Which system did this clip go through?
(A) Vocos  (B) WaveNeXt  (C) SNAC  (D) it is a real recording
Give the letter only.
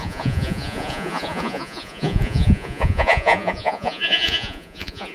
A